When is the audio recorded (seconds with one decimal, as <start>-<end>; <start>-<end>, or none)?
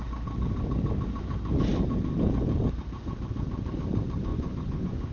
0.0-4.3